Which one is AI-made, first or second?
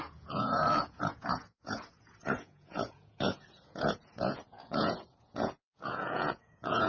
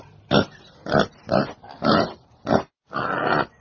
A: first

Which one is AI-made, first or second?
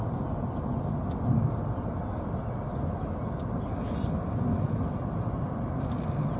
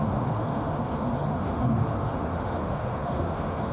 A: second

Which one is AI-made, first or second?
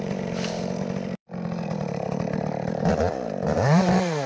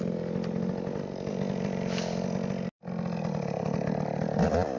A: first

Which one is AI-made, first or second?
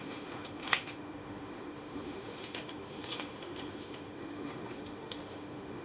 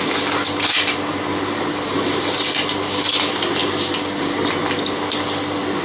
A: first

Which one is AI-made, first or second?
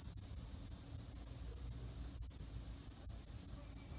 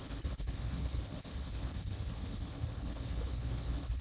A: second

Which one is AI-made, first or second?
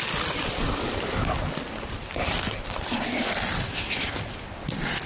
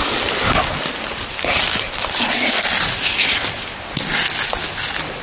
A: first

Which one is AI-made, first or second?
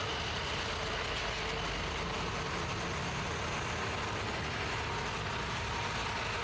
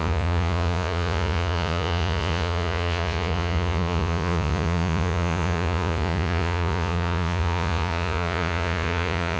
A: second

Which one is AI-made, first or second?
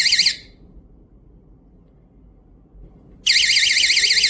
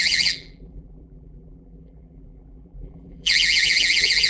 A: second